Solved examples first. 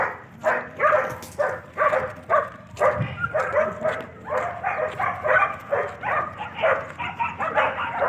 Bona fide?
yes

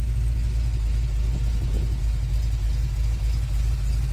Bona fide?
yes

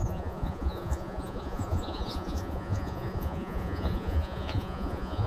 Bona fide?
no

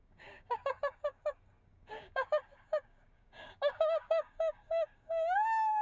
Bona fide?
no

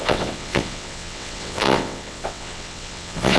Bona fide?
no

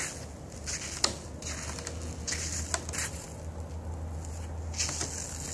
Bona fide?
yes